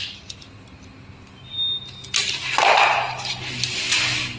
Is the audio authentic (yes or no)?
yes